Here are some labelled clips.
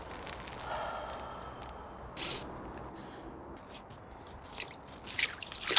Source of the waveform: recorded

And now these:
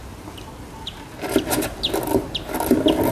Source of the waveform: recorded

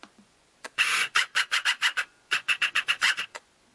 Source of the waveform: remade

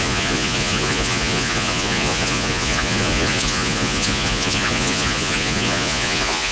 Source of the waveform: remade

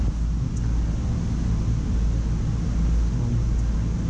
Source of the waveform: recorded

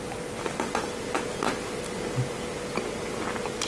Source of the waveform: recorded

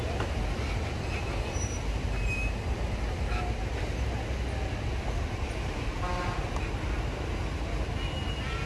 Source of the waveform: recorded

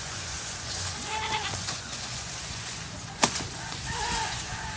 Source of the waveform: remade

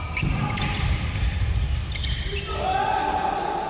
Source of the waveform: recorded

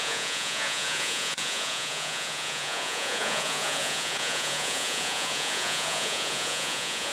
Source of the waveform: remade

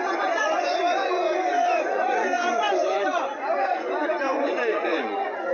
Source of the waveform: remade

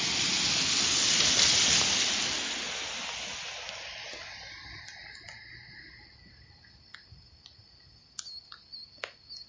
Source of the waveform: recorded